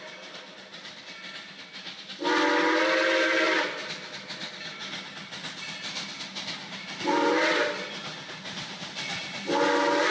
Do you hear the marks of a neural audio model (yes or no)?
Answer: no